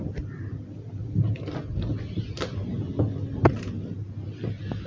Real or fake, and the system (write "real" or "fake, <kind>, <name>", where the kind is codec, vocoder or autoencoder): real